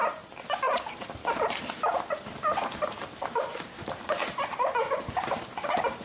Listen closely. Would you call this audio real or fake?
fake